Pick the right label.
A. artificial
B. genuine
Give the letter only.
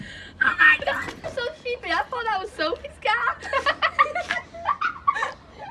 B